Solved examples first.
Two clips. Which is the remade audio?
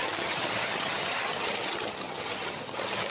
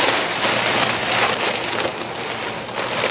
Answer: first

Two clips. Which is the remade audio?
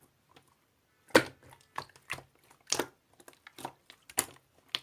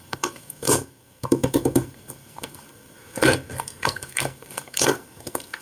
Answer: second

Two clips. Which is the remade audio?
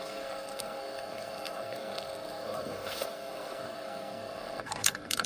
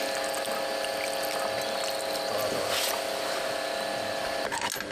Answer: first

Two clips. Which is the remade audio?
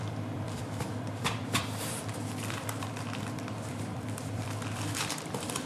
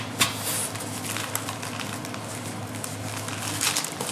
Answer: first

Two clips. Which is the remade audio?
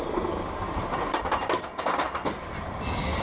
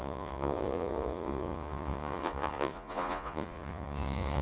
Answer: second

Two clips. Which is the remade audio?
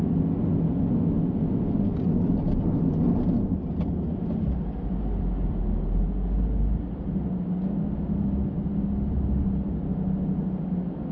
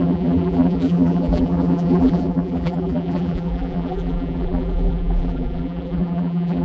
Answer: second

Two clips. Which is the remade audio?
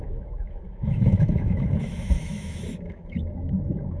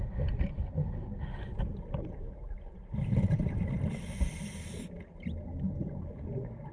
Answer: first